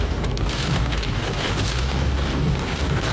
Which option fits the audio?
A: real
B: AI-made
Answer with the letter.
B